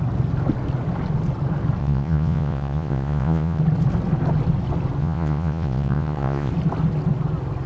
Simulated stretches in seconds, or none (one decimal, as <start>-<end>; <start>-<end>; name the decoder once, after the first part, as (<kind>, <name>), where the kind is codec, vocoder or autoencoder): 1.8-3.6 (vocoder, Vocos); 5.0-6.5